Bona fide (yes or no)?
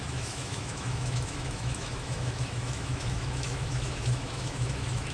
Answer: no